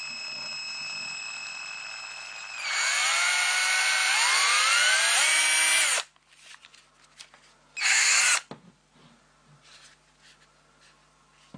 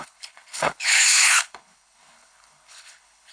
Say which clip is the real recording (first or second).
first